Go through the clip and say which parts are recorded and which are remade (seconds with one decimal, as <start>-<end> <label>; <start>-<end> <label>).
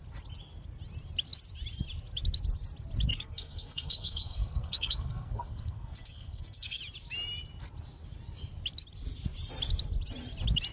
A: 0.0-3.1 recorded; 3.1-6.8 remade; 6.8-10.7 recorded